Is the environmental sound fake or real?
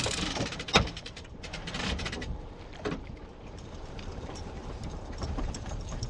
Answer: fake